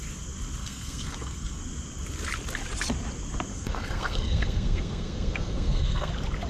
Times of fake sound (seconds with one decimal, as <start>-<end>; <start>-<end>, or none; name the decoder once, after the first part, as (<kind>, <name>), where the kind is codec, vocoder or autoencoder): 0.6-1.6 (codec, SNAC); 3.5-6.1